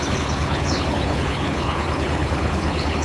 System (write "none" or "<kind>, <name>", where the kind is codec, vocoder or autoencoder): codec, HILCodec